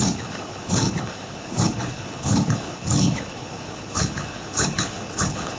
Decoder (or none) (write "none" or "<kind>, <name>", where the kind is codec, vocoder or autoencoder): codec, HILCodec